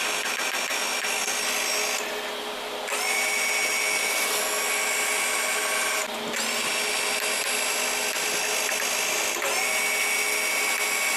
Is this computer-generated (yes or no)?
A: no